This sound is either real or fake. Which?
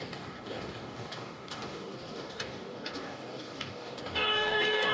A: fake